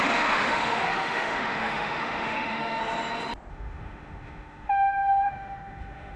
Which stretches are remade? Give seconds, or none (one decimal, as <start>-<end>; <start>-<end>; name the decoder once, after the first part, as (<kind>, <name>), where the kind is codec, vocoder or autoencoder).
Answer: 0.0-2.8 (autoencoder, DAC-VAE); 3.5-6.2

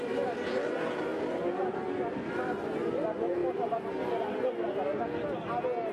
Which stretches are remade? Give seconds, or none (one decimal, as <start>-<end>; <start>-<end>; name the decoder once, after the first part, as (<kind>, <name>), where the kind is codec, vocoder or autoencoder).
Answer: none

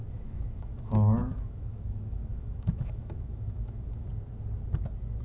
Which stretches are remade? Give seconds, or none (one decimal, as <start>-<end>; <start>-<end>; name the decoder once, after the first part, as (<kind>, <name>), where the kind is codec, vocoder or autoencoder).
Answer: 0.0-4.1 (autoencoder, DAC-VAE)

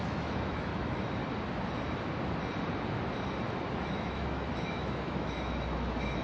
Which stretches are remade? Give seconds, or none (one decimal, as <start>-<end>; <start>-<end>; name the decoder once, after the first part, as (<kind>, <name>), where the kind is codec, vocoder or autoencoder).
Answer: 0.0-1.2 (autoencoder, DAC-VAE); 3.7-6.2

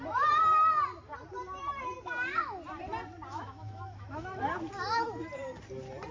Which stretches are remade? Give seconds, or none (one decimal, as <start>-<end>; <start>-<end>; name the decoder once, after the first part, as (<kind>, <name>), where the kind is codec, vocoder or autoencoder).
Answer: 3.3-4.4 (autoencoder, DAC-VAE)